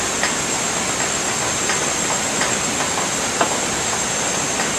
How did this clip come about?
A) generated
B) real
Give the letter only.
B